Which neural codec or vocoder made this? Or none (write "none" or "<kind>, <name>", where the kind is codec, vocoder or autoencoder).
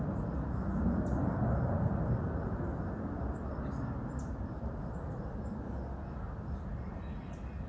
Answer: none